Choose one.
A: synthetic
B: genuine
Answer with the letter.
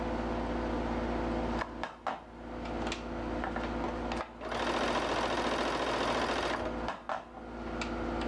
B